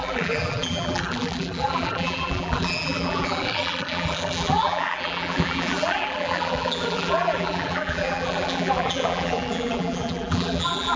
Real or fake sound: fake